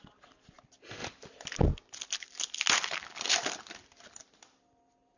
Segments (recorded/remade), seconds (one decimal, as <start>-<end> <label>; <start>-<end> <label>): 0.0-5.2 recorded